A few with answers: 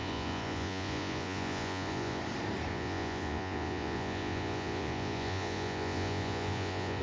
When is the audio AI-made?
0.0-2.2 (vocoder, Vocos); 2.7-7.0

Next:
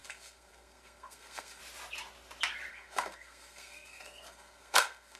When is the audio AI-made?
0.0-1.6 (codec, SNAC); 2.7-5.2

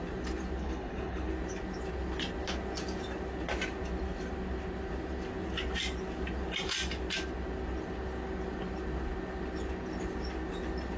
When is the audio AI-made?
0.6-1.3 (codec, HILCodec)

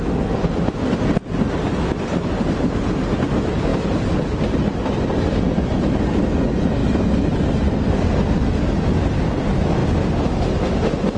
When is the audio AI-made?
none

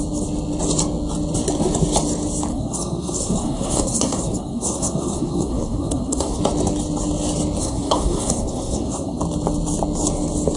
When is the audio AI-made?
2.5-6.4 (codec, SNAC); 7.6-9.2

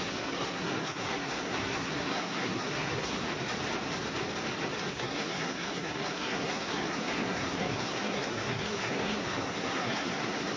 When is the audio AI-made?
0.0-3.2 (codec, SNAC); 4.9-10.6